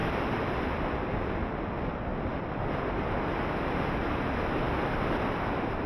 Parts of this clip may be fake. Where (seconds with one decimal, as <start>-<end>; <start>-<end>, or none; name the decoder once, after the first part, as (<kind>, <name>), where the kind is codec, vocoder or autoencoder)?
0.0-1.3 (vocoder, BigVGAN v2)